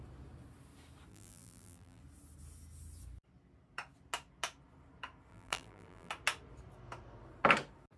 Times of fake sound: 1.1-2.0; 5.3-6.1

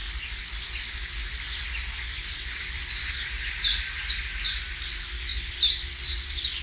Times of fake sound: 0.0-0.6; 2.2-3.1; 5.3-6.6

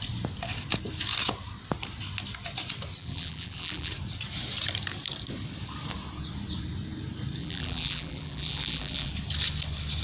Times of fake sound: 3.0-3.9; 7.4-9.1

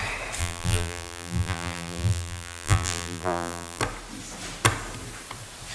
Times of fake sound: 0.4-3.8

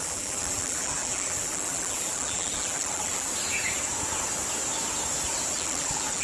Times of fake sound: 0.0-3.3; 5.5-6.2

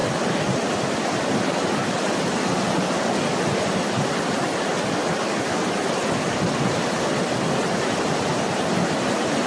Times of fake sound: 0.8-1.8; 7.0-9.5